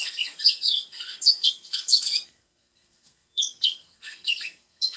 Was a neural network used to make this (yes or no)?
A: yes